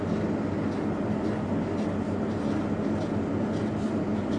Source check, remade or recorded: recorded